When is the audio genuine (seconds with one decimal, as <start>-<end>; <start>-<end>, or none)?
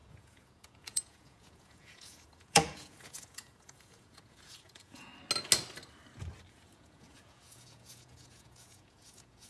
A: 5.1-6.5